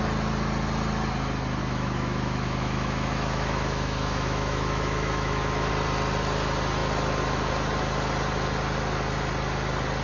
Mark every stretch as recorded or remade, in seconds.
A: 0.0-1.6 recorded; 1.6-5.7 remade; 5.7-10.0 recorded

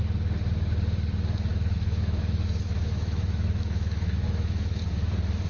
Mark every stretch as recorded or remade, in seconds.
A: 0.0-1.5 recorded; 1.5-4.8 remade; 4.8-5.5 recorded

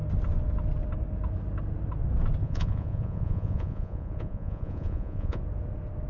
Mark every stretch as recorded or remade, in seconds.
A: 0.0-2.4 recorded; 2.4-5.4 remade; 5.4-6.1 recorded

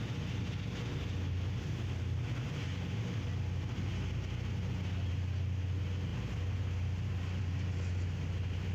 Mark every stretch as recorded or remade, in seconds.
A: 0.0-8.7 recorded

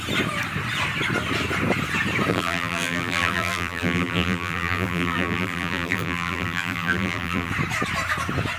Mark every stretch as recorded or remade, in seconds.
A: 0.0-2.3 recorded; 2.3-7.5 remade; 7.5-8.6 recorded